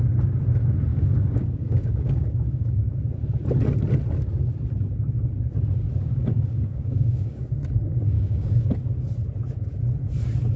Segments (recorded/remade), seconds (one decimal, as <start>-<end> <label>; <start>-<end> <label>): 0.0-0.9 recorded; 0.9-3.0 remade; 3.0-6.0 recorded; 6.0-7.5 remade; 7.5-7.9 recorded; 7.9-8.7 remade; 8.7-10.6 recorded